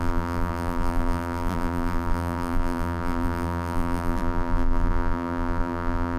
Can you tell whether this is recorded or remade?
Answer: remade